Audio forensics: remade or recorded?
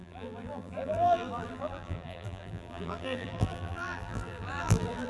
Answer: remade